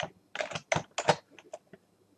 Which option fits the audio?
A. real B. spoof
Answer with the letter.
A